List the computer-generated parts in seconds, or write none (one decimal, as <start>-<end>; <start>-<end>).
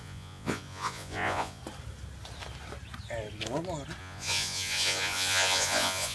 0.0-1.6; 4.0-6.1